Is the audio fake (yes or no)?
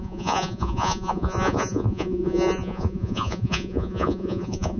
yes